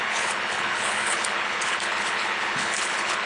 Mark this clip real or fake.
fake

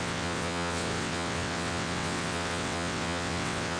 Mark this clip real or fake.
fake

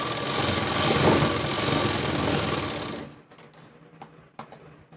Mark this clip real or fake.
real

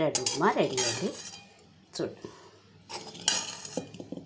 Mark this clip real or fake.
real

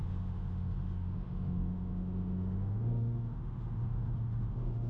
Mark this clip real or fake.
fake